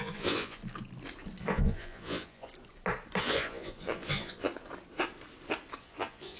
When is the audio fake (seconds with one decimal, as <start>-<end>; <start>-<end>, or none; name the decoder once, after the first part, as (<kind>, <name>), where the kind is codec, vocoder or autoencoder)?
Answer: 0.0-0.6 (vocoder, Vocos); 1.4-2.5; 3.2-4.5; 5.8-6.4